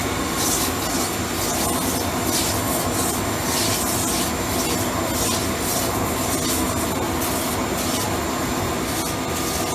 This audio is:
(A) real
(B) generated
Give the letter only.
A